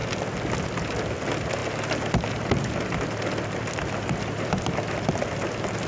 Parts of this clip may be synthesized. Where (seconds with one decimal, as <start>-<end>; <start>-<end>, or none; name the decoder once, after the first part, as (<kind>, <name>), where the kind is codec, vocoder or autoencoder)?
1.6-5.1 (vocoder, BigVGAN v2)

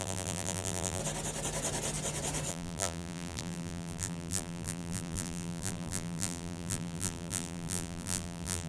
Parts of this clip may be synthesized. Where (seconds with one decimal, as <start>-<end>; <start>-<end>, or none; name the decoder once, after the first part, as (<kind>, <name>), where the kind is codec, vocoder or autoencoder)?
0.0-1.0 (vocoder, BigVGAN v2); 2.5-8.7